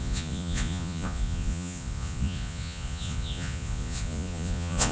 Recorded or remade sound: remade